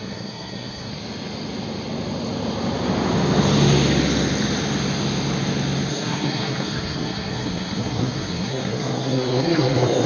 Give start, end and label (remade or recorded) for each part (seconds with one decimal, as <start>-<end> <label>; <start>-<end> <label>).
0.0-0.9 remade; 0.9-5.9 recorded; 5.9-10.1 remade